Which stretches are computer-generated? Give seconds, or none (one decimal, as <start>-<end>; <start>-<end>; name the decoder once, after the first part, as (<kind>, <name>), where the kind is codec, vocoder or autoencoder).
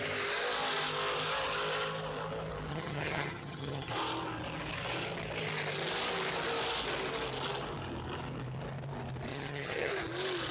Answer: 2.7-3.9 (vocoder, HiFi-GAN); 9.3-9.9